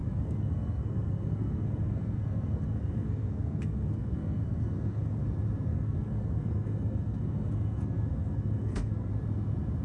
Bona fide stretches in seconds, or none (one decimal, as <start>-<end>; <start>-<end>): 5.2-5.7; 9.1-9.8